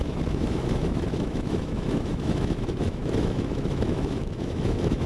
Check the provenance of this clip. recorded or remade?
remade